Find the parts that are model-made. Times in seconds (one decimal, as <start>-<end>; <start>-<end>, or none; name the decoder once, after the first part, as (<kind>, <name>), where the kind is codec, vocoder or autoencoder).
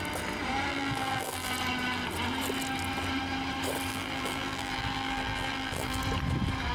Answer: 0.7-1.5 (vocoder, BigVGAN v2); 3.9-6.0